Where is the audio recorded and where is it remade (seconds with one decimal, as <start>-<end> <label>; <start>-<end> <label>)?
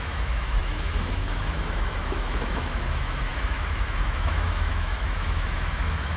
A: 0.0-6.2 remade